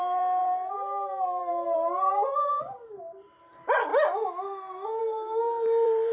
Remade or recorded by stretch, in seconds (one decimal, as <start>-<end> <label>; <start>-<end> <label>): 0.0-3.9 remade; 3.9-5.0 recorded; 5.0-6.1 remade